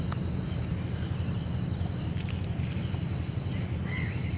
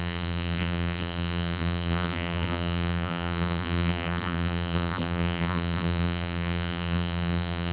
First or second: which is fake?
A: second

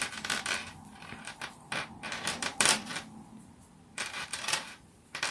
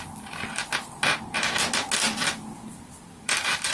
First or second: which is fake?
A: first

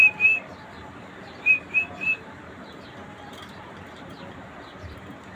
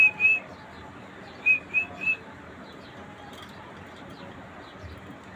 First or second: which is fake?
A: first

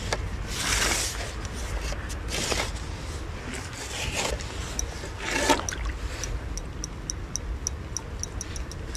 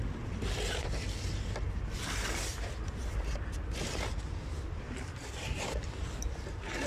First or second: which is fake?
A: second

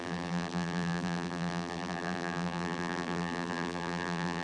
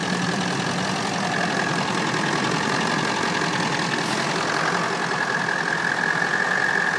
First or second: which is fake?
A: first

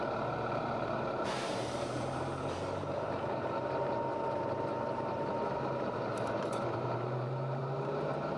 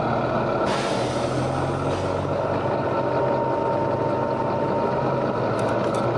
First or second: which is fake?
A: first